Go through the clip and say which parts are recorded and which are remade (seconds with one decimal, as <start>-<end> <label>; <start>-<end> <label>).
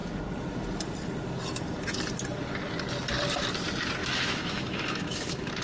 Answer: 0.0-4.0 recorded; 4.0-5.6 remade